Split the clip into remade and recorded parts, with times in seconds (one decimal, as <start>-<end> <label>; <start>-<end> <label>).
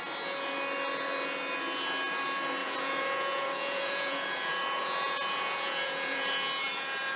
0.0-2.6 recorded; 2.6-7.2 remade